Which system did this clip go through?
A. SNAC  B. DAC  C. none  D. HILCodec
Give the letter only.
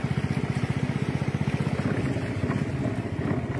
C